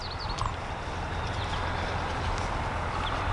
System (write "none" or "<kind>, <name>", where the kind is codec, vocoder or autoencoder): none